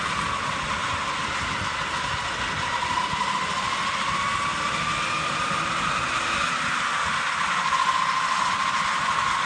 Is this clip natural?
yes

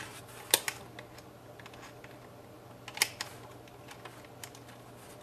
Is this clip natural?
yes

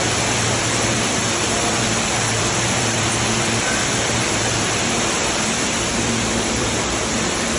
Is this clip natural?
no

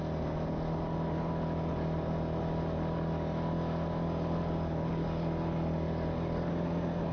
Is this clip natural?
yes